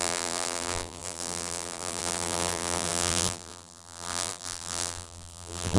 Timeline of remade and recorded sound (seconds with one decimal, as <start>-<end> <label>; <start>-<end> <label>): 0.0-5.8 remade